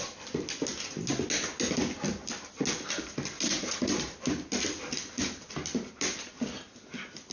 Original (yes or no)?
yes